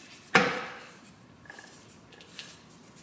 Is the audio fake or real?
real